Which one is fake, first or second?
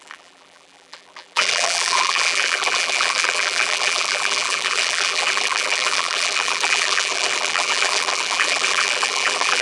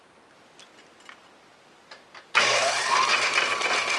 first